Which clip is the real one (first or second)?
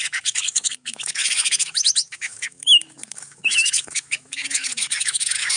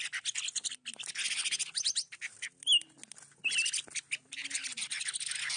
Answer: second